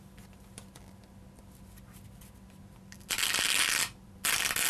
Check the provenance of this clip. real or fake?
real